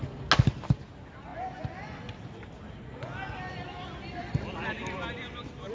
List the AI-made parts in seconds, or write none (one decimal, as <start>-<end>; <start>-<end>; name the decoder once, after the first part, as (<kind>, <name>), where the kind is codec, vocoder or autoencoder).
none